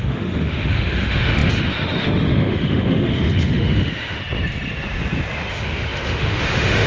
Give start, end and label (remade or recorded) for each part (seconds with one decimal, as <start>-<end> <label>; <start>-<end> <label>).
0.0-4.2 remade; 4.2-5.5 recorded; 5.5-6.9 remade